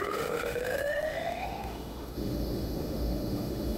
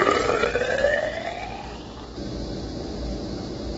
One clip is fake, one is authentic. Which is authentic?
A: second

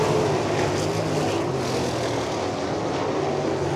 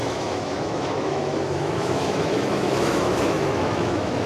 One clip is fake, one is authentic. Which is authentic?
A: first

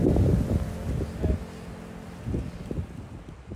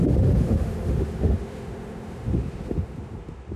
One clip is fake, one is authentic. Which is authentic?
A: first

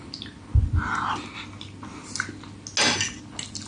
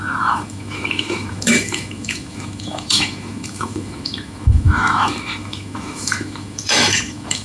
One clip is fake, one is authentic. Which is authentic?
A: first